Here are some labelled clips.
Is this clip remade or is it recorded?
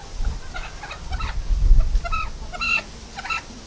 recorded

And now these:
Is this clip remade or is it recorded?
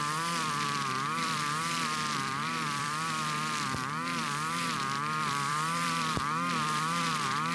remade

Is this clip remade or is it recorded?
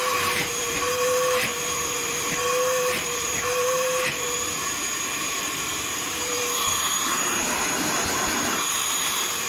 remade